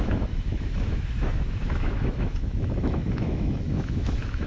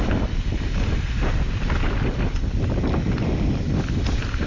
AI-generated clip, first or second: first